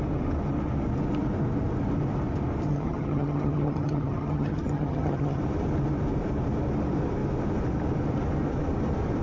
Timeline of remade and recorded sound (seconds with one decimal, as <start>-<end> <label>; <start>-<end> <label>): 0.0-2.7 recorded; 2.7-5.4 remade; 5.4-9.2 recorded